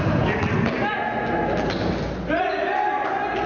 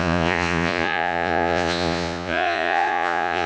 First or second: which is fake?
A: second